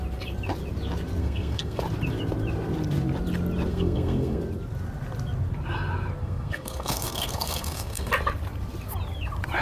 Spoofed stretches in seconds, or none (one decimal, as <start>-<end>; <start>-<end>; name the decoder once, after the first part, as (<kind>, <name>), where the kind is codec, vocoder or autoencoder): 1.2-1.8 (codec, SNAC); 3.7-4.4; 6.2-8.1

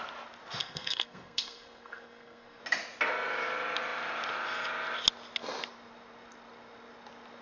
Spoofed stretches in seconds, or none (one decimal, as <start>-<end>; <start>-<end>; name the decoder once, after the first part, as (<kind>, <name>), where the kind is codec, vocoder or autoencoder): 0.6-2.6 (codec, SNAC)

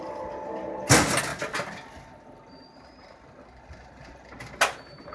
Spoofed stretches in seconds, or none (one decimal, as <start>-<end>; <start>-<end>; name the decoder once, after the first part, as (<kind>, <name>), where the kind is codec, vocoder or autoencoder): none